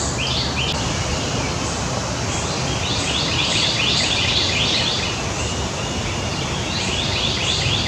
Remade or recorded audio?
recorded